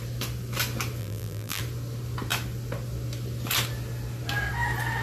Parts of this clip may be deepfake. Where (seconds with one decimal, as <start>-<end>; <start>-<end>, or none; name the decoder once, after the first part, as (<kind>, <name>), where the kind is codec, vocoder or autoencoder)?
1.0-1.6 (vocoder, BigVGAN v2)